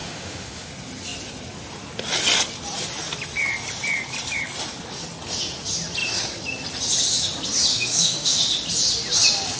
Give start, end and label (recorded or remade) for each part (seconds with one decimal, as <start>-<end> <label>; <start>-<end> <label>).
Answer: 0.0-0.7 remade; 0.7-7.7 recorded; 7.7-8.4 remade; 8.4-9.6 recorded